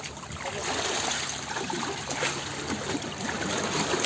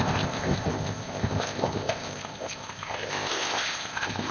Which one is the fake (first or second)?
second